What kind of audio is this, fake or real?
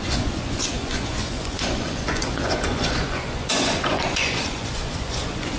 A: fake